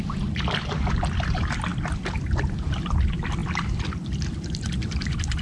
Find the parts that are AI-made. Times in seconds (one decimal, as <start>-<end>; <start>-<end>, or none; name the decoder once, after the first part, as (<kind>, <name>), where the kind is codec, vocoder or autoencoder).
none